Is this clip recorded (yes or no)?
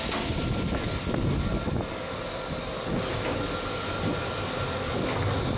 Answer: yes